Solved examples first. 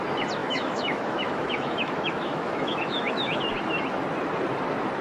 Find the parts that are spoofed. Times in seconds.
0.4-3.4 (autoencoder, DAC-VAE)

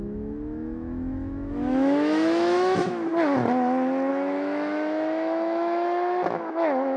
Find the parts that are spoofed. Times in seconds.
0.0-3.1 (autoencoder, DAC-VAE); 4.1-7.0

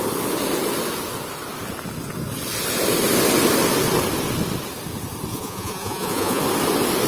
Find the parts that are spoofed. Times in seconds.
5.3-6.4 (vocoder, Vocos)

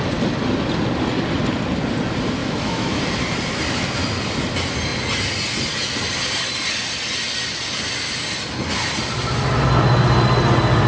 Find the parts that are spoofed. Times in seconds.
2.4-3.0 (autoencoder, DAC-VAE)

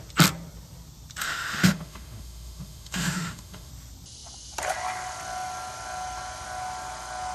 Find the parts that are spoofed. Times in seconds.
1.2-3.7 (autoencoder, DAC-VAE)